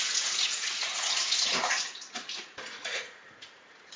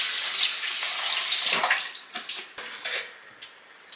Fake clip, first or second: first